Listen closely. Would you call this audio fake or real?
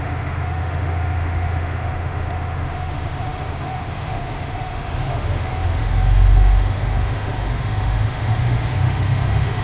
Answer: fake